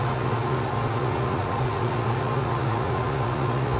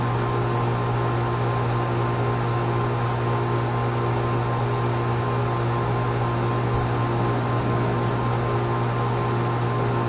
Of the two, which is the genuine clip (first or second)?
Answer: second